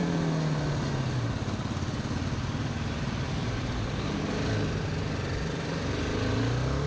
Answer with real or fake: real